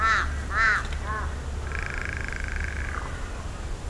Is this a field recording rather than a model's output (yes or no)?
yes